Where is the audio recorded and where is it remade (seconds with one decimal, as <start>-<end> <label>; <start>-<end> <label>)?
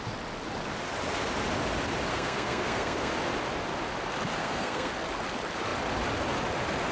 0.0-2.1 recorded; 2.1-3.1 remade; 3.1-4.4 recorded; 4.4-4.9 remade; 4.9-6.9 recorded